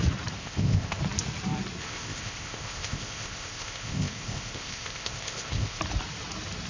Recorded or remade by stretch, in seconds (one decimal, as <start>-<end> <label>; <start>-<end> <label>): 0.0-0.4 recorded; 0.4-1.0 remade; 1.0-1.8 recorded; 1.8-5.8 remade; 5.8-6.7 recorded